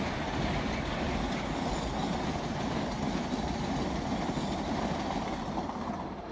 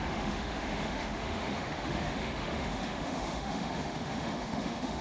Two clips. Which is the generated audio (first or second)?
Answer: second